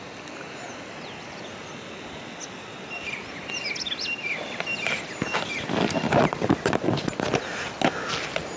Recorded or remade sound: recorded